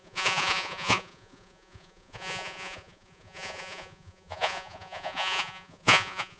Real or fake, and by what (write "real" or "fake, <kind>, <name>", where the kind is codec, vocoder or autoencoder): fake, vocoder, Vocos